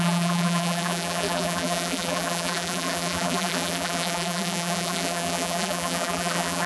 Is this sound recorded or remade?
remade